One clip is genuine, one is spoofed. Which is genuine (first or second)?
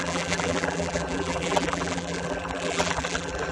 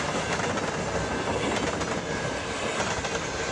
second